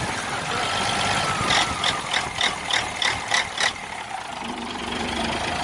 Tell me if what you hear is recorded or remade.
remade